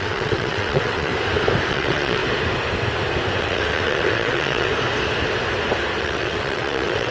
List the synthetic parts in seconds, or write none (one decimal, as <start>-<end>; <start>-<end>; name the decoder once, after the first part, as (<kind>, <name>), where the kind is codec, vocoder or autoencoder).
0.0-1.1 (vocoder, WaveNeXt); 1.7-2.2; 3.4-4.7; 6.0-7.1